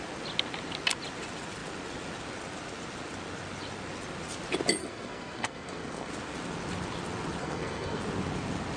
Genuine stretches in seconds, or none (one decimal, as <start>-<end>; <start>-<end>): 0.0-4.8; 6.1-7.4; 8.0-8.8